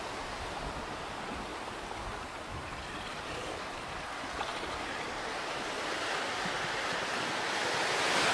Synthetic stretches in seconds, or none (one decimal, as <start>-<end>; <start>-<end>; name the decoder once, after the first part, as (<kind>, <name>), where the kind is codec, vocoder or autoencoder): none